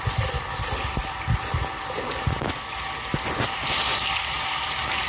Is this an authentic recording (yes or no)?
yes